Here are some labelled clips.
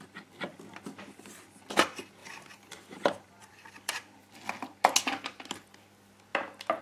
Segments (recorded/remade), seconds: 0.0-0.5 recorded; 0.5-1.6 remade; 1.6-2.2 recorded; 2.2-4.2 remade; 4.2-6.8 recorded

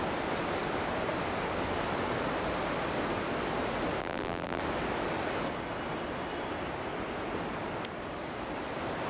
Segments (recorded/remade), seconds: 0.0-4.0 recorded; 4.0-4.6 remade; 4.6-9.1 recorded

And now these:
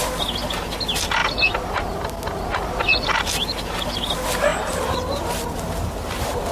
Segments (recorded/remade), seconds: 0.0-6.5 recorded